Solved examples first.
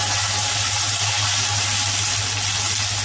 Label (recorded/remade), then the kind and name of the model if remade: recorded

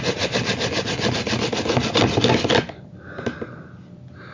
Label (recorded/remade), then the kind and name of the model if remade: recorded